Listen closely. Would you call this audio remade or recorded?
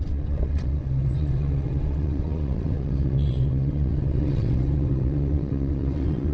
remade